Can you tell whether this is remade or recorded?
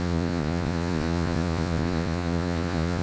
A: remade